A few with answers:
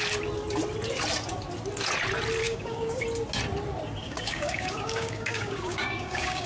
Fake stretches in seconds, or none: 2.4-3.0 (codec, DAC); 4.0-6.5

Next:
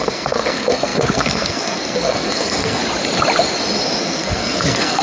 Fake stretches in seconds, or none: 0.0-2.8 (codec, SNAC); 4.0-5.0